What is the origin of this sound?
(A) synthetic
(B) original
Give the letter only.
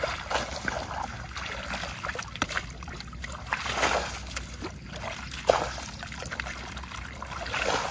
B